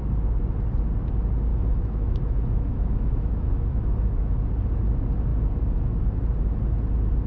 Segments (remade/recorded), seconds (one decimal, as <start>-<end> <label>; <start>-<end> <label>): 0.0-1.5 recorded; 1.5-4.3 remade; 4.3-7.3 recorded